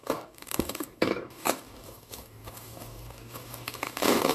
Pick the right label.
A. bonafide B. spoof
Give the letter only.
B